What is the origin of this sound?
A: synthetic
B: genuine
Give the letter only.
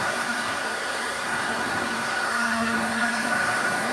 A